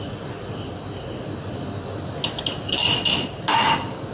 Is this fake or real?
real